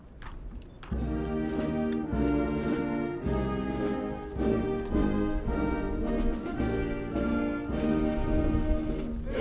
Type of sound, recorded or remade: recorded